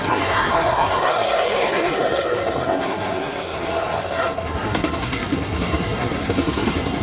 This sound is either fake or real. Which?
fake